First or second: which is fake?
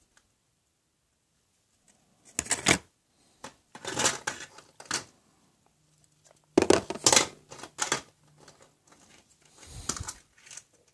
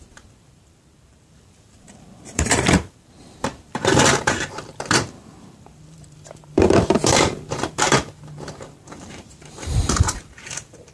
second